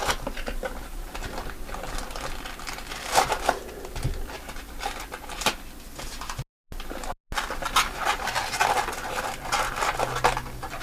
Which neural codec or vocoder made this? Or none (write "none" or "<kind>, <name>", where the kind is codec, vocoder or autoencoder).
none